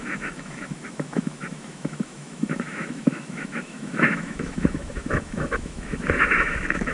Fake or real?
fake